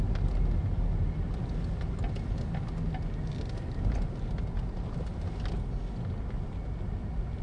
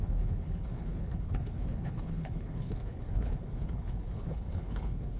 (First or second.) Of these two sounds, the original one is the first